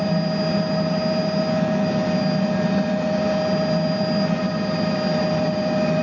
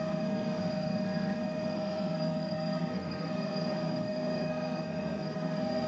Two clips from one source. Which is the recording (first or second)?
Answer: first